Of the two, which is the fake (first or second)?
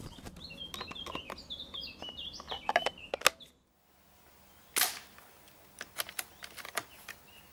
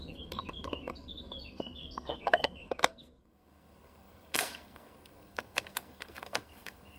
second